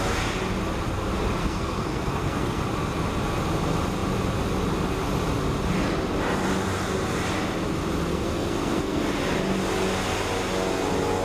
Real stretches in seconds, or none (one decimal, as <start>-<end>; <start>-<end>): 0.0-1.4; 2.6-8.1; 9.0-11.2